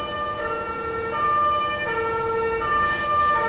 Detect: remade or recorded recorded